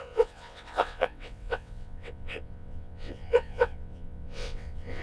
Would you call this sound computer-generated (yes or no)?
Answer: yes